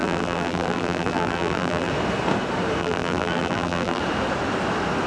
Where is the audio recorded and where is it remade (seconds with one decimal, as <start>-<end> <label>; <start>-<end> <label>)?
0.0-1.9 remade; 1.9-2.8 recorded; 2.8-4.0 remade; 4.0-5.1 recorded